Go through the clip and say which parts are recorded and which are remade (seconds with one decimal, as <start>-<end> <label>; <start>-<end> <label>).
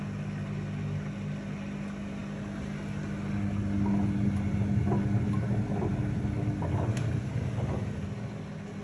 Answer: 0.0-8.8 recorded